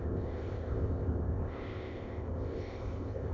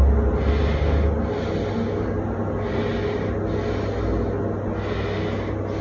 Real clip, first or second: second